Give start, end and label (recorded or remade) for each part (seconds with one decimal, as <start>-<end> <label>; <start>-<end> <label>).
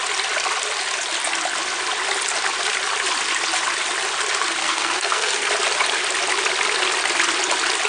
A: 0.0-4.6 recorded; 4.6-5.5 remade; 5.5-7.9 recorded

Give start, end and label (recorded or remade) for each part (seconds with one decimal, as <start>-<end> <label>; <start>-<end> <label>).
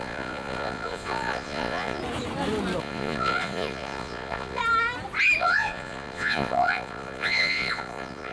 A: 0.0-2.0 remade; 2.0-2.8 recorded; 2.8-4.6 remade; 4.6-5.4 recorded; 5.4-8.3 remade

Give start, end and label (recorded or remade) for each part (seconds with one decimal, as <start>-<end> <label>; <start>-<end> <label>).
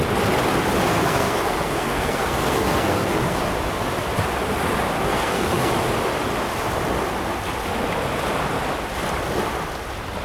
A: 0.0-0.9 recorded; 0.9-3.4 remade; 3.4-5.1 recorded; 5.1-5.7 remade; 5.7-10.2 recorded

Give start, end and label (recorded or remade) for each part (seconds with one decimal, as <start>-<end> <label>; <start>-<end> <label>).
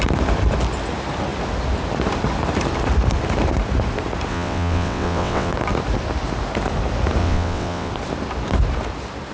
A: 0.0-4.3 recorded; 4.3-5.5 remade; 5.5-7.2 recorded; 7.2-7.9 remade; 7.9-9.3 recorded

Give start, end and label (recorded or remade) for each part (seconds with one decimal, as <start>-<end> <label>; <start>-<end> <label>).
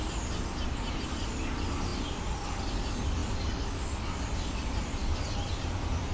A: 0.0-1.9 recorded; 1.9-2.5 remade; 2.5-6.1 recorded